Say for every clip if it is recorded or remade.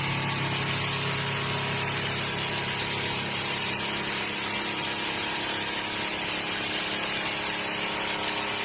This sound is recorded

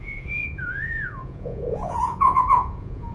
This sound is remade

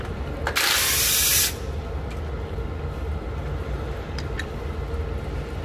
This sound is recorded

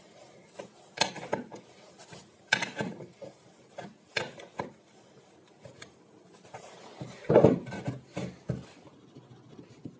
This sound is recorded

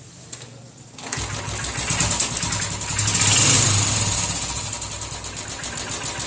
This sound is recorded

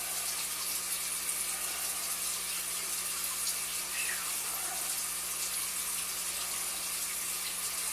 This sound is recorded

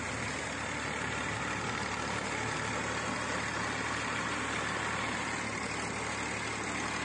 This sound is recorded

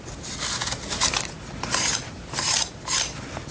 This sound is recorded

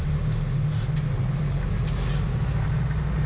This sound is recorded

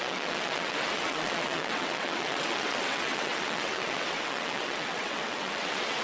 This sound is remade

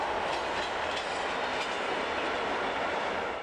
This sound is recorded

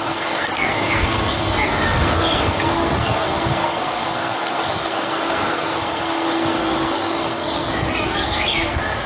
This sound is remade